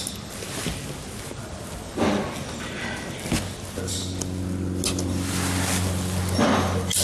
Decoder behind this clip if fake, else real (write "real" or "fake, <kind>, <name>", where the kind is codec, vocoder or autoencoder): real